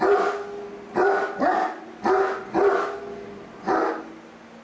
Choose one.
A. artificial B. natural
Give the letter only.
B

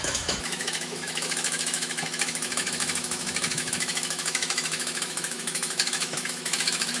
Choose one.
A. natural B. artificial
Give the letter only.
B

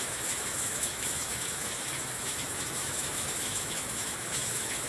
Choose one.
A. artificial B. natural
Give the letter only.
A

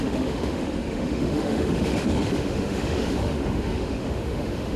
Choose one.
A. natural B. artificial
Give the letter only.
B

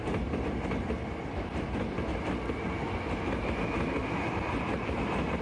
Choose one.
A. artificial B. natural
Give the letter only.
B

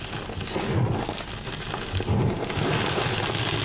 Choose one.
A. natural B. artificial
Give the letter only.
A